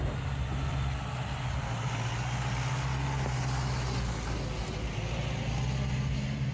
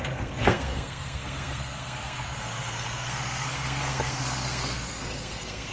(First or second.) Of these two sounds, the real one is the first